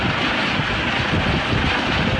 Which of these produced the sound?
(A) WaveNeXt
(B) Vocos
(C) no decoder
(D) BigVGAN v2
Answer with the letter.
C